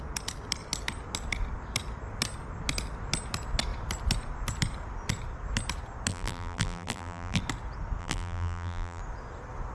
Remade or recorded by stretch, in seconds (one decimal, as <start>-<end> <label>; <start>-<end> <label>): 0.0-6.1 recorded; 6.1-7.4 remade; 7.4-8.0 recorded; 8.0-9.0 remade; 9.0-9.7 recorded